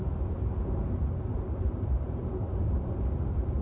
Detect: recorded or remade remade